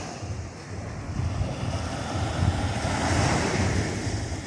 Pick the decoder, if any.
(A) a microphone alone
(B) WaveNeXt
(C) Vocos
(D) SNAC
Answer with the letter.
A